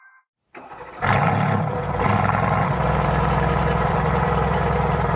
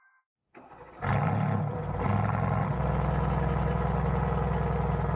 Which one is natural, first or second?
second